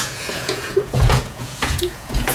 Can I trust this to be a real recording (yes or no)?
no